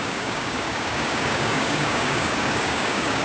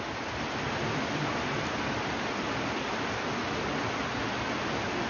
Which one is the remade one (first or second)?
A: first